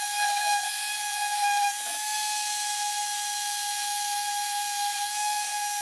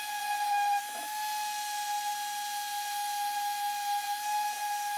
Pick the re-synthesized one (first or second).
first